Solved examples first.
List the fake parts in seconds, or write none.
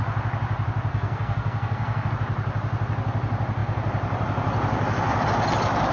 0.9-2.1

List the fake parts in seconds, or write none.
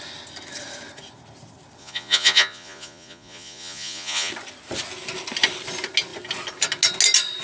1.8-4.3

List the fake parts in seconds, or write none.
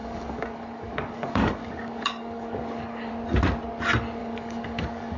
0.0-3.1; 4.2-5.2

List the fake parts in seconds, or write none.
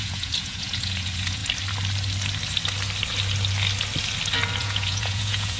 0.0-1.4; 4.6-5.6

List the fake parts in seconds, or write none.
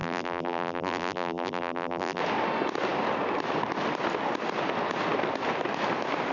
0.0-2.2